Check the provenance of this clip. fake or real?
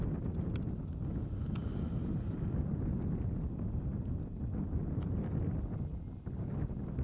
real